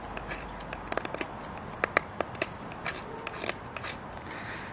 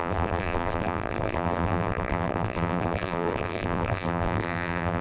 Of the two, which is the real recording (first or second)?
first